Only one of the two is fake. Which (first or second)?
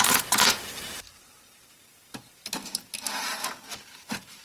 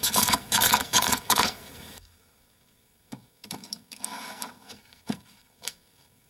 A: second